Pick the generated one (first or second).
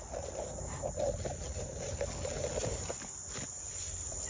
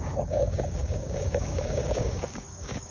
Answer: second